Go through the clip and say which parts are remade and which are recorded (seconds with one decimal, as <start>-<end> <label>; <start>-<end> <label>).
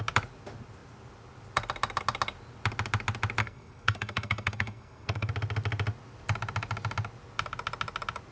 0.0-3.4 recorded; 3.4-5.3 remade; 5.3-8.3 recorded